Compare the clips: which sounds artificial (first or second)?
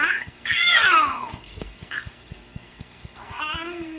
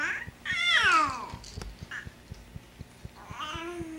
first